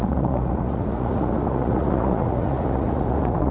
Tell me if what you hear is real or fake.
fake